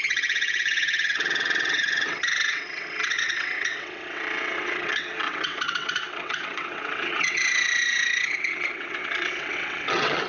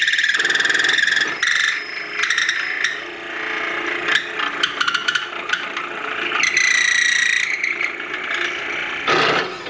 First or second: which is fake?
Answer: first